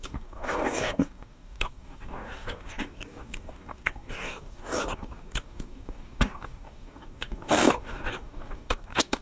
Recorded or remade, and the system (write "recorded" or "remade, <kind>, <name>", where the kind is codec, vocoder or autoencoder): remade, codec, DAC